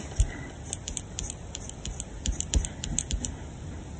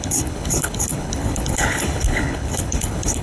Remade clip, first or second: second